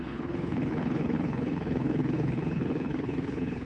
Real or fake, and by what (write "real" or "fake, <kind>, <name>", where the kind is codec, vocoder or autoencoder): fake, codec, HILCodec